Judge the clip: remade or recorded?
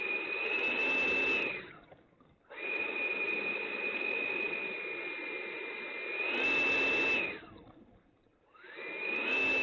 recorded